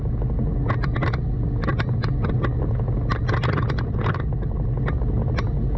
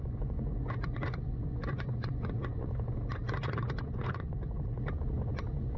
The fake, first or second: second